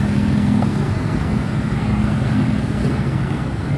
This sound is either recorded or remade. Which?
remade